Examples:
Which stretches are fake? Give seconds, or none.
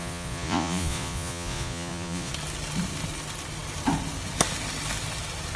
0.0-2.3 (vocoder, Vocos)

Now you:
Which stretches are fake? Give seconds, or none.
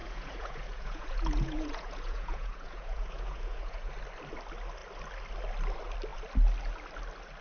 0.0-3.9 (vocoder, Vocos)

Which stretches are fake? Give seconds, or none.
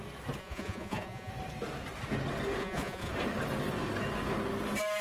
0.4-1.3 (vocoder, Vocos); 2.6-3.1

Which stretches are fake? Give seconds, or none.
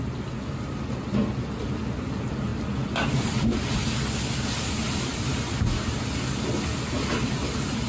none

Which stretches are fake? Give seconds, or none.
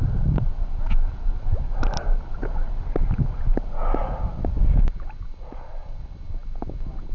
none